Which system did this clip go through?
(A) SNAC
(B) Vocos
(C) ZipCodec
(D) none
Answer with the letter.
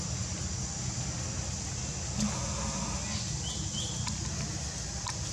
D